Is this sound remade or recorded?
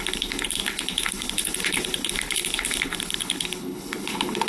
remade